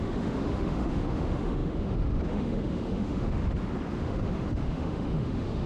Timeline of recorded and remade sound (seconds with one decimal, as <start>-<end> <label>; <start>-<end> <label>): 0.0-3.4 remade; 3.4-4.0 recorded; 4.0-5.7 remade